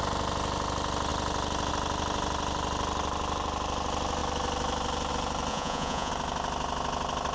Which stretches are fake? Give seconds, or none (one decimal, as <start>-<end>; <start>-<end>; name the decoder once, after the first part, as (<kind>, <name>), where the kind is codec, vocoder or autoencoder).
5.5-6.1 (vocoder, Vocos)